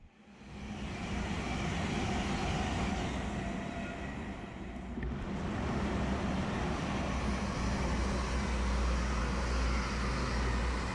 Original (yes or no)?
yes